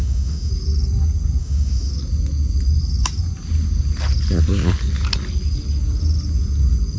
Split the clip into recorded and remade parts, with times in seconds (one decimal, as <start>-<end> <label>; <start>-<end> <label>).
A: 0.0-0.5 remade; 0.5-1.4 recorded; 1.4-1.9 remade; 1.9-7.0 recorded

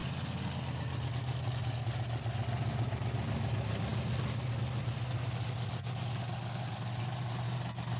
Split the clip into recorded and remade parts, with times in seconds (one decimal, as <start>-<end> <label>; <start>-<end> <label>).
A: 0.0-8.0 recorded